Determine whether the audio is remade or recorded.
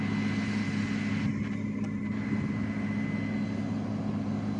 recorded